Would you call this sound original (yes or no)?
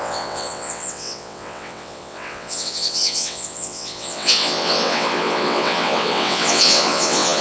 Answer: no